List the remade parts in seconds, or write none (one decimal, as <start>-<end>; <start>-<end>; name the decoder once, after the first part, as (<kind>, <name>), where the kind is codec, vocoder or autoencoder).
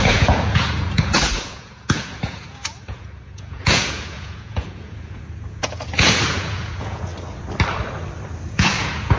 0.0-7.1 (vocoder, Vocos); 8.5-9.2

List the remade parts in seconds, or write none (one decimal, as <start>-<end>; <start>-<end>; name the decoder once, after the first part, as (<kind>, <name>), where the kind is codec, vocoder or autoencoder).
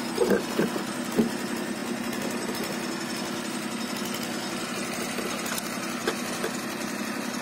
none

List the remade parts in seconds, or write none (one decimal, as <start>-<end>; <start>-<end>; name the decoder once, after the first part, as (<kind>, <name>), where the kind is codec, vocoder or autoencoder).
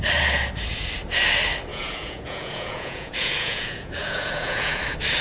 1.7-4.8 (vocoder, Vocos)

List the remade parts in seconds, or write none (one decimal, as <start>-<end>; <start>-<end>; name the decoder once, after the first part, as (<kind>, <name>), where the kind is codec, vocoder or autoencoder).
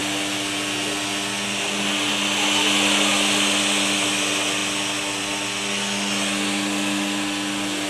none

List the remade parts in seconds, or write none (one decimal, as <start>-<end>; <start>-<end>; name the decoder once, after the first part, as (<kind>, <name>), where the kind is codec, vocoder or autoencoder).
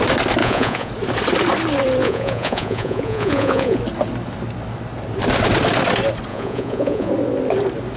0.4-0.9 (vocoder, Vocos); 2.0-3.8; 6.3-7.1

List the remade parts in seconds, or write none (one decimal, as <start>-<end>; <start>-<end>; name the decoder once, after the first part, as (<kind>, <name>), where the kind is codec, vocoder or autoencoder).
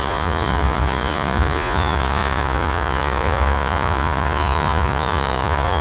0.0-5.8 (vocoder, Vocos)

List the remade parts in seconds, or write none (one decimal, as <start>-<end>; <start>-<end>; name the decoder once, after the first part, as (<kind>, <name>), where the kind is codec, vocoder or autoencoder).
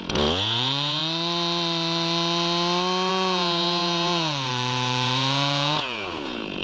0.0-1.0 (vocoder, Vocos); 3.1-6.6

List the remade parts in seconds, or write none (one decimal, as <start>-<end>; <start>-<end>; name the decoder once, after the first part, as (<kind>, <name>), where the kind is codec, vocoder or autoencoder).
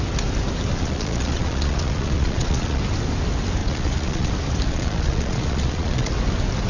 0.7-2.8 (vocoder, Vocos); 3.6-4.3; 4.7-6.1